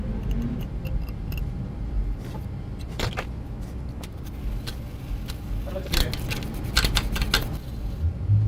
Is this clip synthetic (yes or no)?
no